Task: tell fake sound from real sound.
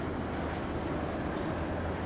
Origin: real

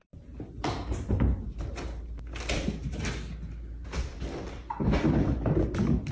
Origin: real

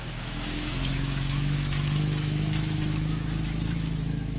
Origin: fake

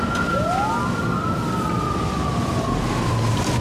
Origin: real